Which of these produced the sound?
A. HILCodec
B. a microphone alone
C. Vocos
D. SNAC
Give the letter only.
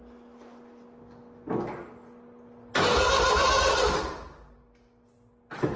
B